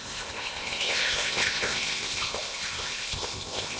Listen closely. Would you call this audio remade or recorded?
remade